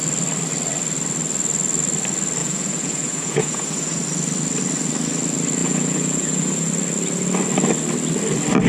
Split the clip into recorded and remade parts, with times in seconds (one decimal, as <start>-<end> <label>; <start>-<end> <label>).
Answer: 0.0-2.4 recorded; 2.4-4.0 remade; 4.0-5.6 recorded; 5.6-6.7 remade; 6.7-8.7 recorded